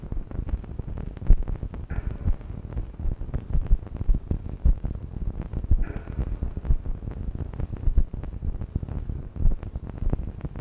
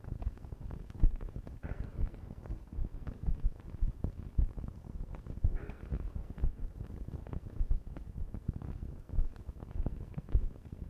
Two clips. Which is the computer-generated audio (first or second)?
second